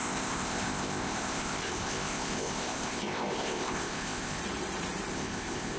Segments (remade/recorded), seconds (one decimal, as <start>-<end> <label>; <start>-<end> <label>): 0.0-4.4 remade; 4.4-5.1 recorded; 5.1-5.8 remade